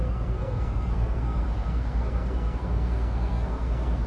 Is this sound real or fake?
fake